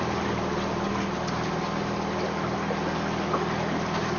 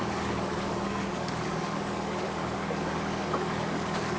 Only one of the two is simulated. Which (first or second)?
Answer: second